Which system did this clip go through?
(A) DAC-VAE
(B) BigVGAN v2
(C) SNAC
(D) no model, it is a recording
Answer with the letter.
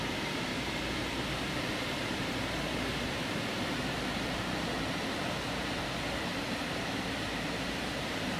B